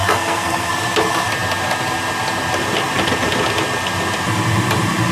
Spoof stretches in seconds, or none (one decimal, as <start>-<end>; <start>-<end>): 0.0-0.7